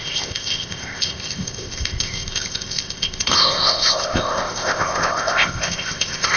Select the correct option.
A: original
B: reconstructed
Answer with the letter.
B